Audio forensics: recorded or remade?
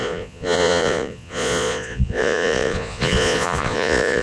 remade